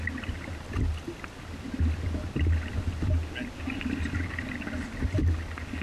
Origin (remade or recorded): recorded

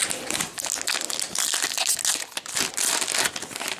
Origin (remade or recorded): recorded